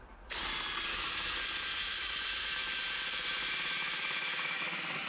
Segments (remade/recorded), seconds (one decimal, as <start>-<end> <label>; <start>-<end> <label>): 0.0-0.9 recorded; 0.9-1.4 remade; 1.4-1.8 recorded; 1.8-5.1 remade